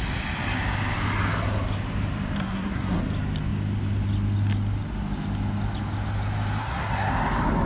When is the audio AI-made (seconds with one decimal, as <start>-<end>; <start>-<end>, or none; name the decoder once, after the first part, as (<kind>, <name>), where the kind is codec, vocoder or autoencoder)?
2.4-3.0 (codec, SNAC); 6.6-7.1